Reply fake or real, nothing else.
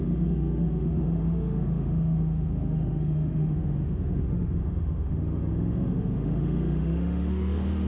fake